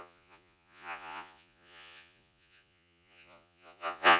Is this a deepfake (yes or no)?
yes